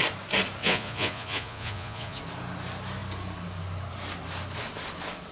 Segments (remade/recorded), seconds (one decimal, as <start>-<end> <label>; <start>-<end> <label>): 0.0-0.6 recorded; 0.6-2.2 remade; 2.2-5.3 recorded